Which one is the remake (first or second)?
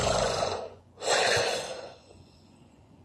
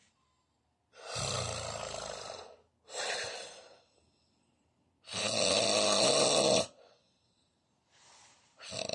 first